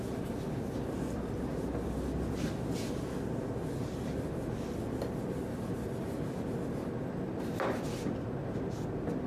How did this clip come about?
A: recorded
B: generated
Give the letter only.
A